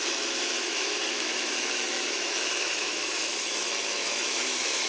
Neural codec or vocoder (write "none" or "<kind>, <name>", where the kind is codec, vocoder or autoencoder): autoencoder, DAC-VAE